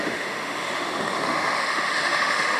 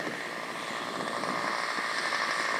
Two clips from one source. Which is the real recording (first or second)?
second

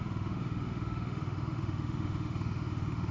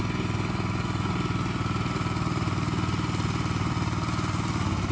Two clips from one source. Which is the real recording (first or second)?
second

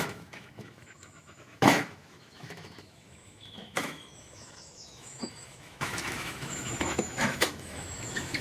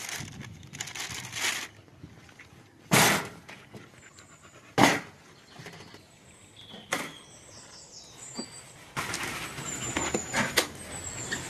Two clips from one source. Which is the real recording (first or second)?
second